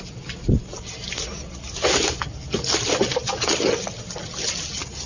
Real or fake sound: real